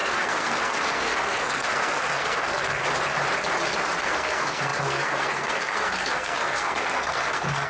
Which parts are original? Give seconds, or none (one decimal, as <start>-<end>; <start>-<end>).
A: 2.8-4.0